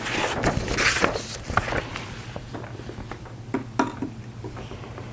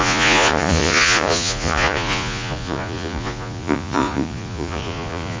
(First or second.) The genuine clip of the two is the first